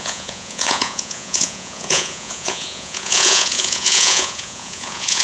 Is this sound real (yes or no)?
no